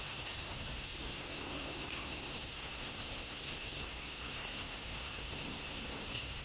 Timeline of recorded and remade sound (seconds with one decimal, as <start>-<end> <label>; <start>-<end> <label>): 0.0-6.4 remade